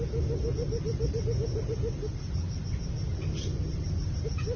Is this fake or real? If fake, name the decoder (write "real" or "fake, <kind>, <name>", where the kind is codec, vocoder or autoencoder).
real